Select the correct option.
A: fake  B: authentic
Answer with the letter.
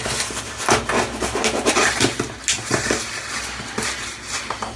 B